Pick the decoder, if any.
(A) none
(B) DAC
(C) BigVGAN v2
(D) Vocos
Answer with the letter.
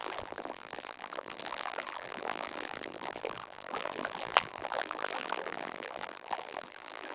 C